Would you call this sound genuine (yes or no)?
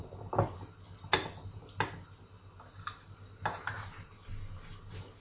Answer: yes